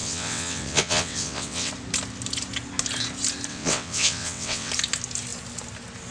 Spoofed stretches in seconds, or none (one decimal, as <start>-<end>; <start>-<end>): 0.0-1.7; 3.5-4.7